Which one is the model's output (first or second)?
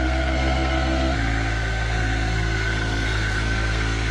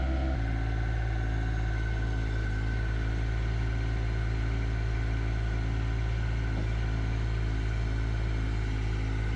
first